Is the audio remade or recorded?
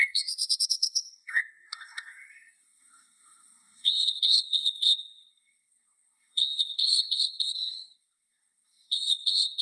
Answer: remade